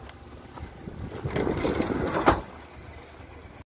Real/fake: real